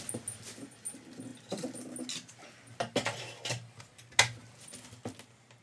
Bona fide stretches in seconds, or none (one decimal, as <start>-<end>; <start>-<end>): 0.0-5.6